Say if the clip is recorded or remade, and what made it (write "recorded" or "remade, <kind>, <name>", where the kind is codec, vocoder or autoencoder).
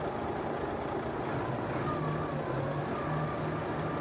recorded